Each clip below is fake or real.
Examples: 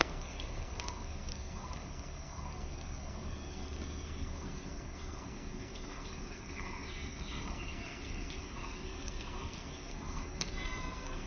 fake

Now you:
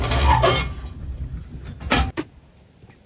real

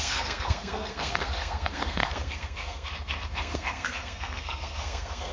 fake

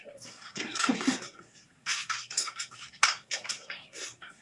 fake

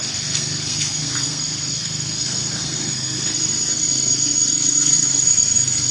fake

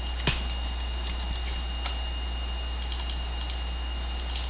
real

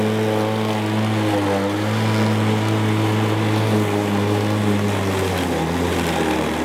real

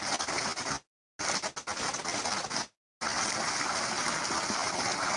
real